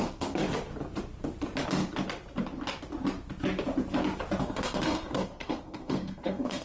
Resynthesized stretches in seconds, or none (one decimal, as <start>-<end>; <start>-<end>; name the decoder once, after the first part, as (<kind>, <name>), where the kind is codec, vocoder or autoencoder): 0.0-0.4 (codec, SNAC); 4.4-6.6